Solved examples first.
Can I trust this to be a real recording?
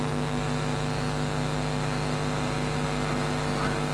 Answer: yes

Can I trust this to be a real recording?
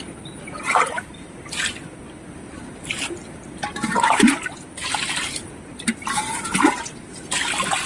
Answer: yes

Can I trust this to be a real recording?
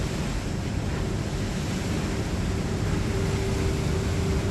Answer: yes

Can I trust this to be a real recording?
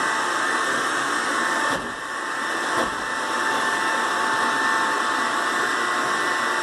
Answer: yes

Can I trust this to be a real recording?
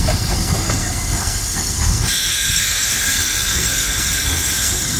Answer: no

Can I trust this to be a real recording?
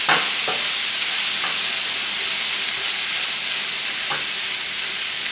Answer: yes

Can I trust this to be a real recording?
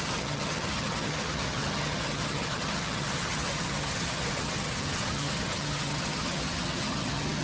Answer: no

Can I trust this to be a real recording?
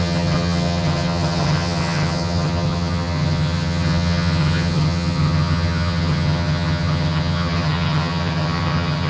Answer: no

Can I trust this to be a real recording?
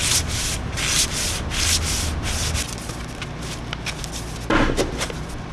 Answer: yes